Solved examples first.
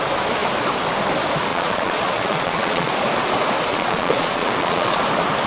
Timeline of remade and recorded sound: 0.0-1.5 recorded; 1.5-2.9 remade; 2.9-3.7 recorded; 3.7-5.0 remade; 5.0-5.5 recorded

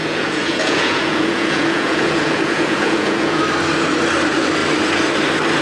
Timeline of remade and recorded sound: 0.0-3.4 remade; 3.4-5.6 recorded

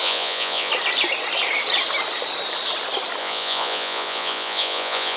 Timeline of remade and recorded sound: 0.0-0.7 remade; 0.7-3.2 recorded; 3.2-5.2 remade

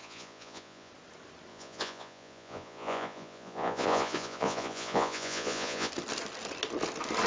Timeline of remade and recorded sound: 0.0-0.9 remade; 0.9-1.5 recorded; 1.5-5.9 remade; 5.9-7.3 recorded